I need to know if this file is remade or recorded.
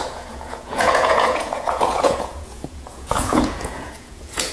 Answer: remade